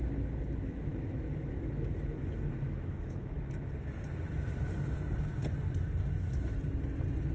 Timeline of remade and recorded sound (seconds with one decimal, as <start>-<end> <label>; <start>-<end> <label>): 0.0-0.9 recorded; 0.9-4.3 remade; 4.3-7.3 recorded